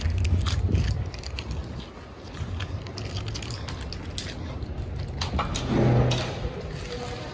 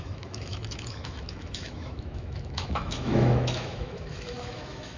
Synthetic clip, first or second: second